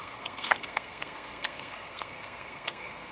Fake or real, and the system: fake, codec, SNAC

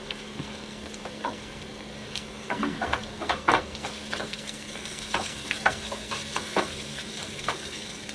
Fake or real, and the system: fake, codec, SNAC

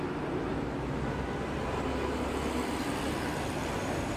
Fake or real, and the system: real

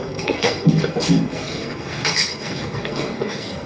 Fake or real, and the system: fake, codec, SNAC